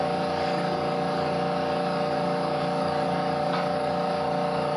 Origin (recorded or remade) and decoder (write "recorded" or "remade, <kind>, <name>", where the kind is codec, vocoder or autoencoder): remade, codec, DAC